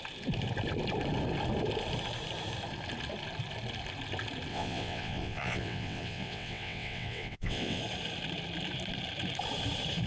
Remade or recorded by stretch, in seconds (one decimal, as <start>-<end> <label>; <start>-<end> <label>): 0.0-4.5 recorded; 4.5-7.8 remade; 7.8-10.1 recorded